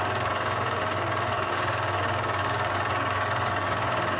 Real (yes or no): no